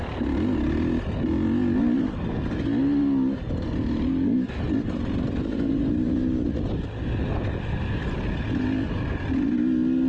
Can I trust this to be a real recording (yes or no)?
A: yes